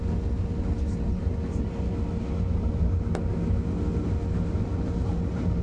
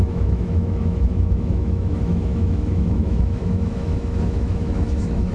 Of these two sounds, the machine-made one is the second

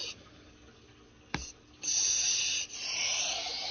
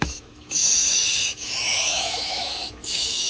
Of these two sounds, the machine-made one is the second